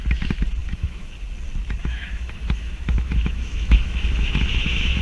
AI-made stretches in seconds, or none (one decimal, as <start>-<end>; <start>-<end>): 0.6-1.1; 1.8-5.0

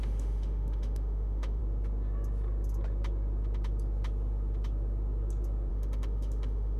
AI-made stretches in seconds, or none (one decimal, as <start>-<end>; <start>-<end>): 0.0-1.6; 5.7-6.8

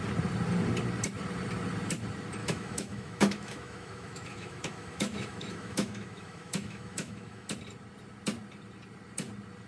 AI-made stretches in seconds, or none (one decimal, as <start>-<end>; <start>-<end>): 2.4-7.5

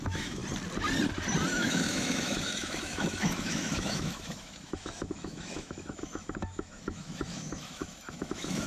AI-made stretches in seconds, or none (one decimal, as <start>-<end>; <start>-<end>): 0.0-0.4; 1.5-8.7

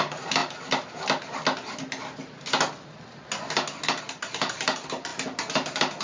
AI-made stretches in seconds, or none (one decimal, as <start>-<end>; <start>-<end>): none

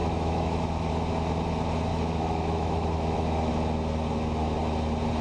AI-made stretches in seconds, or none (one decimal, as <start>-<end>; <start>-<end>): 0.0-0.9; 1.9-3.5

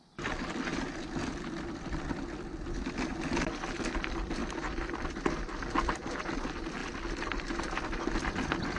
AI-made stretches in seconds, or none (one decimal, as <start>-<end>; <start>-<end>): none